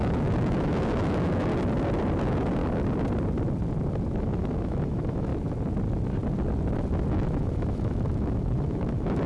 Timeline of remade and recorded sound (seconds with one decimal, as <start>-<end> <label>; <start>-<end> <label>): 0.0-1.5 remade; 1.5-2.2 recorded; 2.2-2.6 remade; 2.6-4.2 recorded; 4.2-5.3 remade; 5.3-7.1 recorded; 7.1-9.3 remade